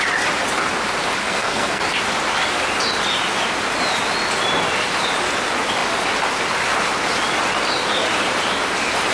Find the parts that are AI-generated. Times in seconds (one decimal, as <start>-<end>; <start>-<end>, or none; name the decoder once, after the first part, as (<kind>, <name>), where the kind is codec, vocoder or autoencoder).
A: 1.2-1.8 (codec, SNAC)